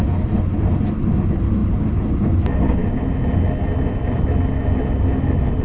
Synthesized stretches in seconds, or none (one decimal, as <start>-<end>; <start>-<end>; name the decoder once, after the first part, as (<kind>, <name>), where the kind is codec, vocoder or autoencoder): none